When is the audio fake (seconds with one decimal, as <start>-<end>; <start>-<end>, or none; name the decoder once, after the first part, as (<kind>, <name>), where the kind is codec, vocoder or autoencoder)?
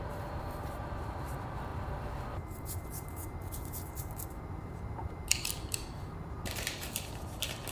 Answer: 0.0-7.7 (vocoder, BigVGAN v2)